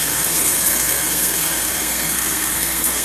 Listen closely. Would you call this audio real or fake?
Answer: fake